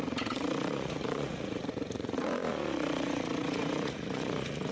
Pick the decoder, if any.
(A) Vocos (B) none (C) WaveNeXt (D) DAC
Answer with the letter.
A